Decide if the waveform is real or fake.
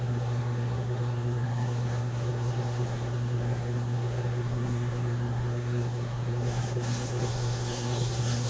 fake